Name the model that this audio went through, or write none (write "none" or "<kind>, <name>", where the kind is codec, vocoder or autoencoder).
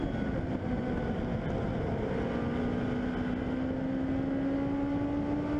none